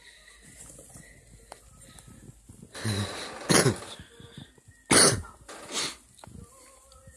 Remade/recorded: recorded